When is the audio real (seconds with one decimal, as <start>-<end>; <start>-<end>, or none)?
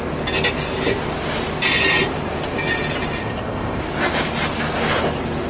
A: 0.0-3.2; 3.8-5.5